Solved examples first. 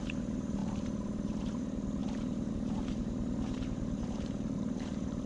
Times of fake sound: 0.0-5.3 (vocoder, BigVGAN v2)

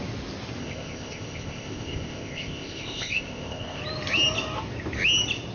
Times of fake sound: 0.6-3.8 (codec, ZipCodec)

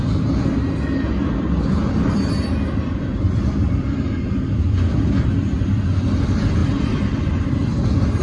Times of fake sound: none

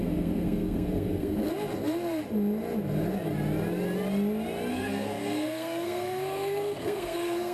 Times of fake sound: 0.0-1.5 (codec, SNAC); 4.7-7.5

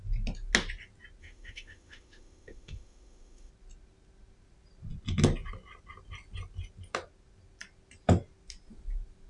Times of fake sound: 1.2-3.5 (autoencoder, DAC-VAE)